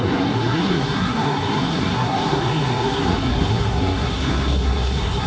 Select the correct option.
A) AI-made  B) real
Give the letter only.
A